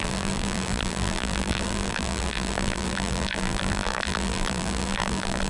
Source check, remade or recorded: remade